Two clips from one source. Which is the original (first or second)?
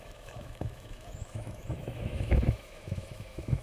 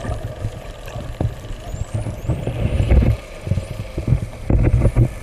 second